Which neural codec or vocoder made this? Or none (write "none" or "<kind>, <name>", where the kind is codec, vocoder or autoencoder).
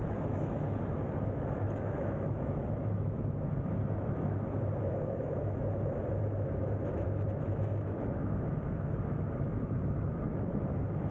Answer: autoencoder, DAC-VAE